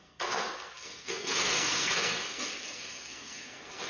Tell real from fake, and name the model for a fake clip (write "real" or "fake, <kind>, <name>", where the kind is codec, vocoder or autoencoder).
fake, codec, SNAC